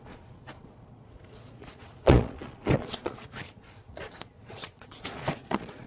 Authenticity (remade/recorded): remade